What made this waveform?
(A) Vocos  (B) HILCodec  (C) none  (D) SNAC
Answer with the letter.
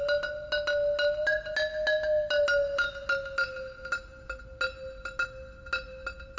C